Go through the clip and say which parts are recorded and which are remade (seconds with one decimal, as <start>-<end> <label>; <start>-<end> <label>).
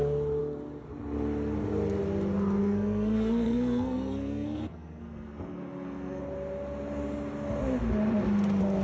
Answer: 0.0-2.6 recorded; 2.6-6.2 remade; 6.2-8.8 recorded